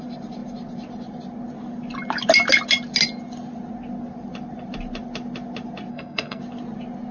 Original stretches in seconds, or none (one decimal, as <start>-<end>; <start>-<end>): 0.0-5.9; 6.4-7.1